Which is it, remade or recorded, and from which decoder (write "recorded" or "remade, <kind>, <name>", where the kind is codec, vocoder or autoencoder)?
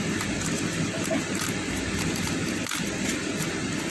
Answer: recorded